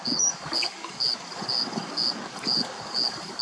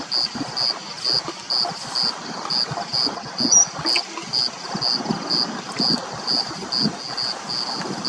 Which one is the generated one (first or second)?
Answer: first